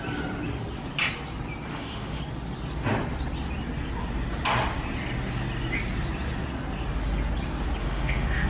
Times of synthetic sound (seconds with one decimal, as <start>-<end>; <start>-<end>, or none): 1.7-2.2; 7.8-8.5